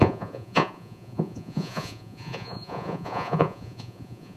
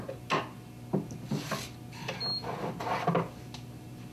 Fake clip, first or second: first